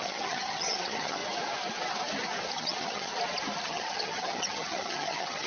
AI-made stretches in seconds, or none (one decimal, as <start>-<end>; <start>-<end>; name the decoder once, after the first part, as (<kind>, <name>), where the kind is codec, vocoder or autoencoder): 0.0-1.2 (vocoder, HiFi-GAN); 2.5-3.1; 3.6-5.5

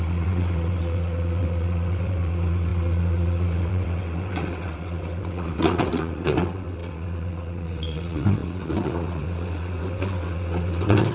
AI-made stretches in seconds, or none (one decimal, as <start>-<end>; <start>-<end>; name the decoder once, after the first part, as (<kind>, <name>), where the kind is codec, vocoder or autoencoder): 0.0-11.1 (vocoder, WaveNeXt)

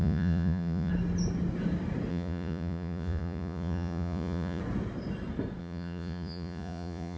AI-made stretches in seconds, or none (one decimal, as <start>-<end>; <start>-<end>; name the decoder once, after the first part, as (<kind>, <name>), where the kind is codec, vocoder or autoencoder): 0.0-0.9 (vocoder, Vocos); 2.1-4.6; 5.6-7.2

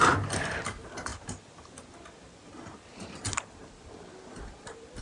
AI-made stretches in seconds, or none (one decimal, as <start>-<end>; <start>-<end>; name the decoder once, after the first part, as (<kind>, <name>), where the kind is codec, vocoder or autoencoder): none

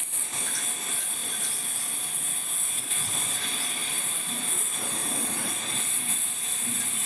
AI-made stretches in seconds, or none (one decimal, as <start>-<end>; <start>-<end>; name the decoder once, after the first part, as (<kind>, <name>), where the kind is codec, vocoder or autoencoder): 1.2-1.9 (vocoder, BigVGAN v2); 3.8-4.4; 5.0-7.1

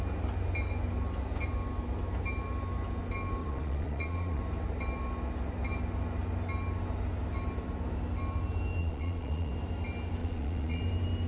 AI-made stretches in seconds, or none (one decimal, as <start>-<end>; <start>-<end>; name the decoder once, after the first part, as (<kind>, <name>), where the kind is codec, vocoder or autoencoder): 3.4-4.4 (vocoder, Vocos); 8.8-9.5; 10.2-10.8

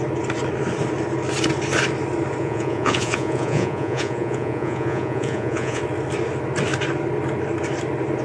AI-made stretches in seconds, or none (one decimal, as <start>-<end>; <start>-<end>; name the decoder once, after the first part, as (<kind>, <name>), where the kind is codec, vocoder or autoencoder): 2.4-5.8 (vocoder, Vocos)

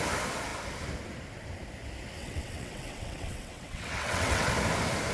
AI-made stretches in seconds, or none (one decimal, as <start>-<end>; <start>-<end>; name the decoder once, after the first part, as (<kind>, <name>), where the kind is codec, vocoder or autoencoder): 2.2-4.5 (vocoder, WaveNeXt)